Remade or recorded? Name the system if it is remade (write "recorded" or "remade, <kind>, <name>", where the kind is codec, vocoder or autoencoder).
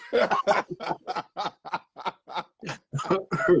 recorded